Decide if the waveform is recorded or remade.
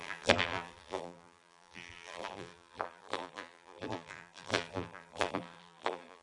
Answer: remade